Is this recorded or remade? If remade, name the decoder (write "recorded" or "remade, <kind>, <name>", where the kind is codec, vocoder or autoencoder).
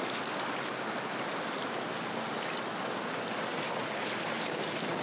recorded